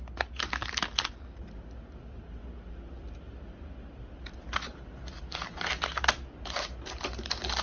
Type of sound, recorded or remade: recorded